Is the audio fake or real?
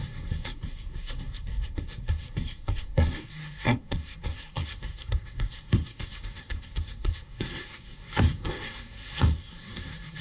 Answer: fake